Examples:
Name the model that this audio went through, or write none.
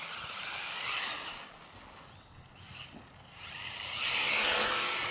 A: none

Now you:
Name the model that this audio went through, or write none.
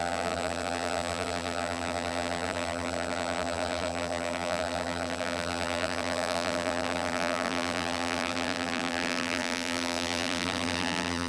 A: vocoder, BigVGAN v2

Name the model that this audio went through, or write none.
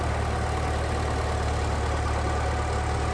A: none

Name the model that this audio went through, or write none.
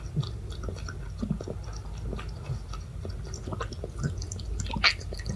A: none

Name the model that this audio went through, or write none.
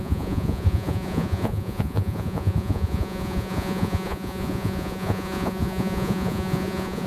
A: vocoder, Vocos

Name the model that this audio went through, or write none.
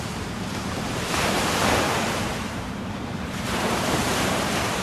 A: vocoder, BigVGAN v2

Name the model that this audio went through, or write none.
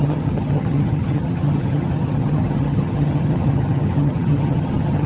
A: vocoder, HiFi-GAN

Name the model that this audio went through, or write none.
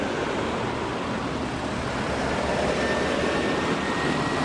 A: none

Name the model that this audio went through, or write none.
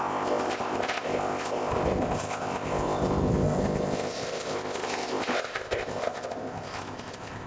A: codec, ZipCodec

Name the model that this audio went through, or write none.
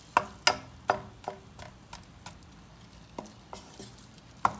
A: none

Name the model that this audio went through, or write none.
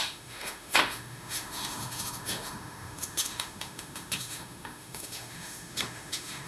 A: autoencoder, DAC-VAE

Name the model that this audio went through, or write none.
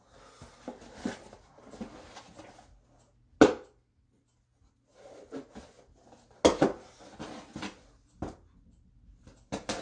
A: none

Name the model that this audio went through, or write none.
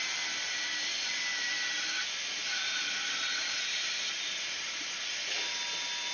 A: none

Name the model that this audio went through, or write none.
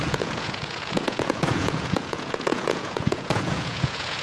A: vocoder, Vocos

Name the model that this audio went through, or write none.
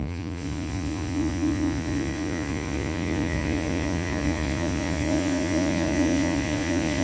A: vocoder, Vocos